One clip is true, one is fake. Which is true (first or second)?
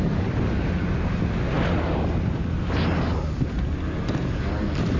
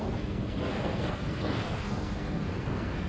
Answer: first